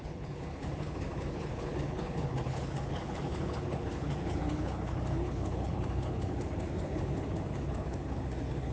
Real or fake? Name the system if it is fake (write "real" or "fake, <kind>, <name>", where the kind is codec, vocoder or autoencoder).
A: fake, codec, HILCodec